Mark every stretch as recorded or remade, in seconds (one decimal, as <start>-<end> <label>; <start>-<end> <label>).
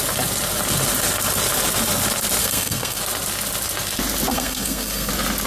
0.0-2.4 recorded; 2.4-3.0 remade; 3.0-4.3 recorded; 4.3-5.1 remade; 5.1-5.5 recorded